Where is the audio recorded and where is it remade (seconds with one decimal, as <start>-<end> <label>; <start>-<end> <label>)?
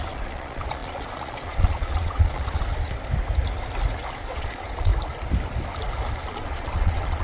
0.0-2.6 remade; 2.6-4.2 recorded; 4.2-4.9 remade; 4.9-6.3 recorded; 6.3-7.2 remade